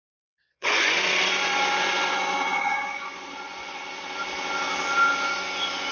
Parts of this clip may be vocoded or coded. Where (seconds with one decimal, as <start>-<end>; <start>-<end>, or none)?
0.0-3.8; 5.1-5.9